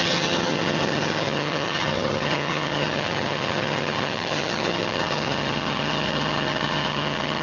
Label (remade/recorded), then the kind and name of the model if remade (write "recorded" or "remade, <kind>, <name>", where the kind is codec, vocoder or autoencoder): remade, vocoder, HiFi-GAN